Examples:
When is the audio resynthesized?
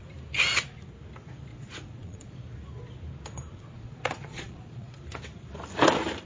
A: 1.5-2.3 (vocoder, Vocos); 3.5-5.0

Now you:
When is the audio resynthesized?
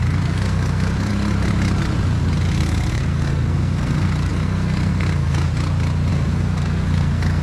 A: 0.0-1.1 (codec, SNAC); 2.5-5.5; 6.1-7.4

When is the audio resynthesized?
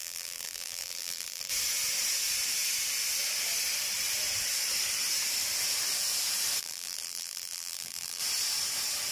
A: 0.0-1.5 (vocoder, BigVGAN v2); 6.6-8.2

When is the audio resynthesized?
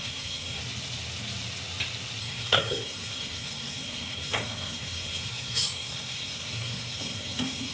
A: 0.0-0.6 (codec, SNAC); 2.2-7.7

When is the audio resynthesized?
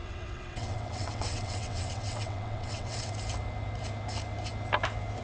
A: 0.0-3.1 (vocoder, WaveNeXt)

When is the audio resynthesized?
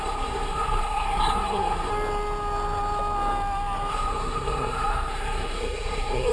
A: 0.0-1.9 (codec, SNAC); 3.9-6.3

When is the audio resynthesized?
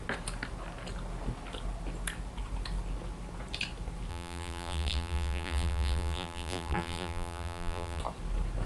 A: 4.1-8.0 (vocoder, BigVGAN v2)